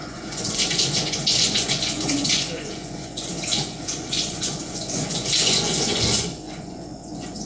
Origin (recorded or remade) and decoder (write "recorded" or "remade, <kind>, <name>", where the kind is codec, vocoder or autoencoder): remade, vocoder, Vocos